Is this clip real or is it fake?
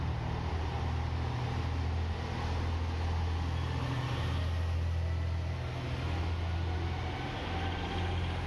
real